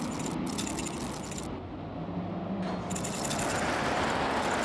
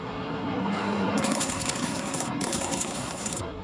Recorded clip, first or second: first